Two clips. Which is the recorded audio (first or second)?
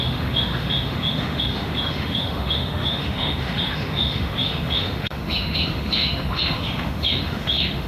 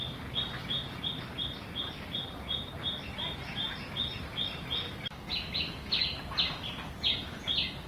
second